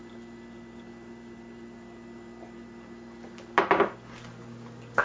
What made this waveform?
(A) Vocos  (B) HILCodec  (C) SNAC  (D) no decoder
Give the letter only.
D